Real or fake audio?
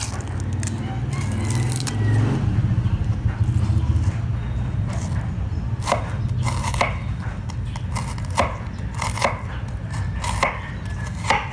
real